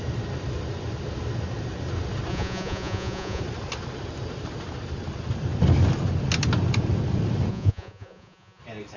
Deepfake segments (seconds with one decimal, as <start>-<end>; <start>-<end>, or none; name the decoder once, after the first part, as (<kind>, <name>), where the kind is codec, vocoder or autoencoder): 2.3-3.4 (vocoder, Vocos); 7.5-8.6